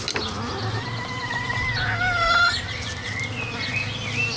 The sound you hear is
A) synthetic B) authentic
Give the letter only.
B